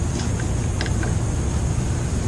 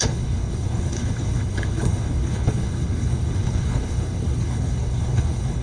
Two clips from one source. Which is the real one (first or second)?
first